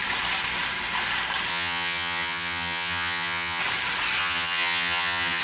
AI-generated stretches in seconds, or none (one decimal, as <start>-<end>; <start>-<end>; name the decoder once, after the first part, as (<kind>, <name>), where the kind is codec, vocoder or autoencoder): 1.5-3.6 (vocoder, HiFi-GAN); 4.2-5.4